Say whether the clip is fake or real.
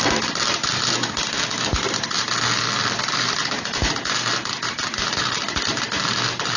real